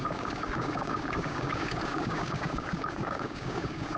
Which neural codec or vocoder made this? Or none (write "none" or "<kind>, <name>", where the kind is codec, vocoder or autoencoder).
codec, DAC